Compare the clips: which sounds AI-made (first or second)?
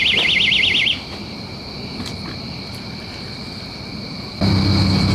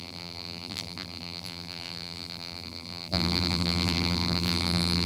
second